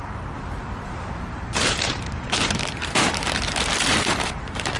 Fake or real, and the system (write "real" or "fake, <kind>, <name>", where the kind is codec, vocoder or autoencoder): fake, vocoder, BigVGAN v2